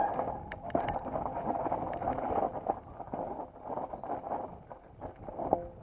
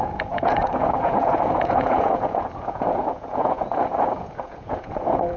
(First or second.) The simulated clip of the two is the second